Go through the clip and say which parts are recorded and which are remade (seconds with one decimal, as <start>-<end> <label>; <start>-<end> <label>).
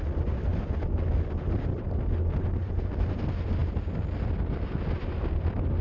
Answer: 0.0-2.6 recorded; 2.6-3.2 remade; 3.2-5.8 recorded